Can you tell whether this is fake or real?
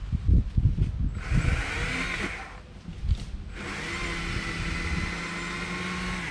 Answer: real